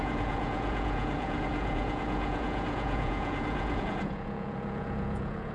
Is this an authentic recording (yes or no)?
no